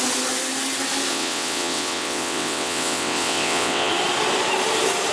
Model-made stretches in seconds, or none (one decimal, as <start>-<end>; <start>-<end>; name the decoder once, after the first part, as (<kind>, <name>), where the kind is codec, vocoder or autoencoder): 1.1-3.9 (vocoder, WaveNeXt)